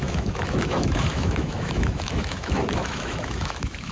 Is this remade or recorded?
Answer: remade